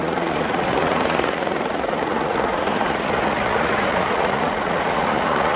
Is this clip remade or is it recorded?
remade